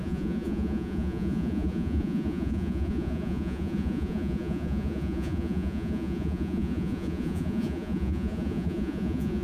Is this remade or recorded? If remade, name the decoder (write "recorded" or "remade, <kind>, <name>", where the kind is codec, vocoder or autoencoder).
remade, vocoder, Vocos